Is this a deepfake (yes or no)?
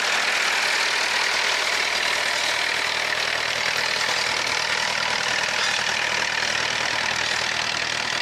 no